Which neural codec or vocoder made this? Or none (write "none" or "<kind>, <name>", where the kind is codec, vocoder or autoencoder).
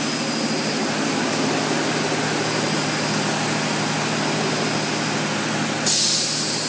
none